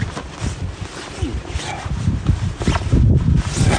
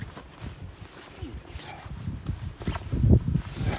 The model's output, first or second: first